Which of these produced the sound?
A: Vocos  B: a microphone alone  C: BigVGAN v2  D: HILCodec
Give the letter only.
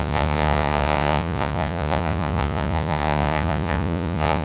A